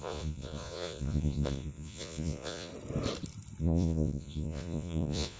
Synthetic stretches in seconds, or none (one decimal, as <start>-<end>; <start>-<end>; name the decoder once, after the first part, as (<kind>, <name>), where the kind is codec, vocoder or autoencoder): 0.0-2.7 (vocoder, Vocos); 3.6-5.4